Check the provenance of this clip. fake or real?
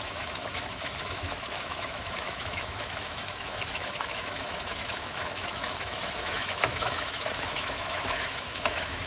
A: fake